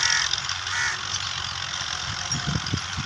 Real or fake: real